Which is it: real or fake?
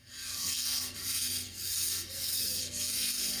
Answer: fake